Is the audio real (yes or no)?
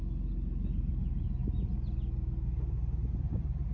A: yes